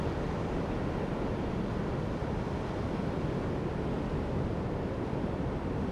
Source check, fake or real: real